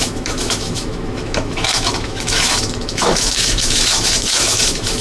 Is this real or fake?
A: fake